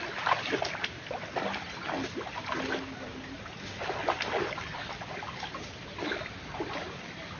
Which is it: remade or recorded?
recorded